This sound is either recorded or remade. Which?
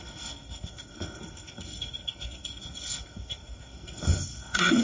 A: remade